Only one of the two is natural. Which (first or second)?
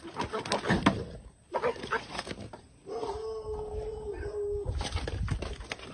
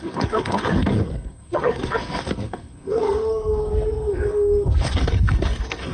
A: first